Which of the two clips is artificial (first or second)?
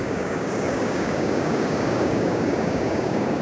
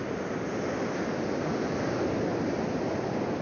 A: first